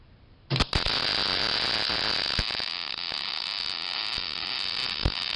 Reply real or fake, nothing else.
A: real